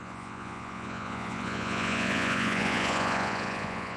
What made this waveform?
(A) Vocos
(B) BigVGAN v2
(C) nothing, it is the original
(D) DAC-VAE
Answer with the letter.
A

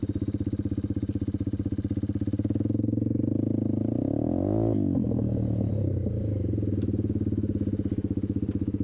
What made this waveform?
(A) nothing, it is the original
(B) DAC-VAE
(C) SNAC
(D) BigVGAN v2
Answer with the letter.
A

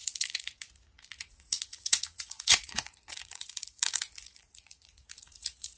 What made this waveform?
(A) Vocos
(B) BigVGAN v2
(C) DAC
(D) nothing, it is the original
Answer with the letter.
A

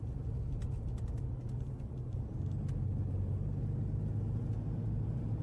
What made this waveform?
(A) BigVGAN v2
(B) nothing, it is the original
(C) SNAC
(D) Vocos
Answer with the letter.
B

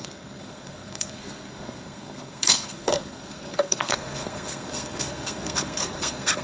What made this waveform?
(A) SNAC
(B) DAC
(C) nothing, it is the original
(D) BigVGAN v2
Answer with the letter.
A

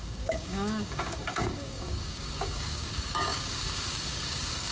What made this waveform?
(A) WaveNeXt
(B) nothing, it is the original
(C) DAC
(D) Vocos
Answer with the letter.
C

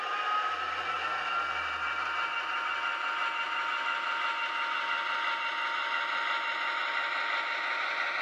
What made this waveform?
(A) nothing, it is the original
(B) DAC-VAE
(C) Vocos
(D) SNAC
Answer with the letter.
A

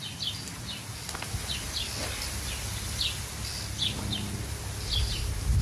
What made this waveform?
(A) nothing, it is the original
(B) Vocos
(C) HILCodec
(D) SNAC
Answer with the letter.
A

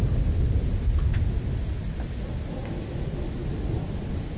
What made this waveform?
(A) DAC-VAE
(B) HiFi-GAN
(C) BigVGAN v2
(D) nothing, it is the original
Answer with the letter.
D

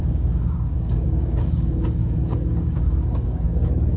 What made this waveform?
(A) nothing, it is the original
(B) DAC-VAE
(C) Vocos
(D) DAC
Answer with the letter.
D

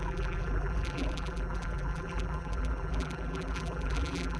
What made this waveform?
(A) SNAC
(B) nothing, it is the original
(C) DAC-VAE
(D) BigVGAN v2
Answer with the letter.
D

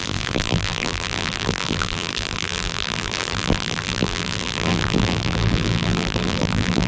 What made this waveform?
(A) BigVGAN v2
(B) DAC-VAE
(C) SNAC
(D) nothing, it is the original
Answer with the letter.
A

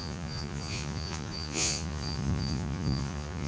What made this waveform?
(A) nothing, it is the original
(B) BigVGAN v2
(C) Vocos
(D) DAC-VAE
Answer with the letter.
C